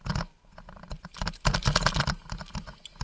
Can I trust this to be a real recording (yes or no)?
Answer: yes